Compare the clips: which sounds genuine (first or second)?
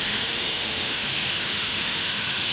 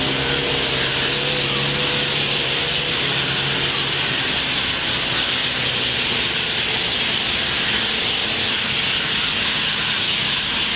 second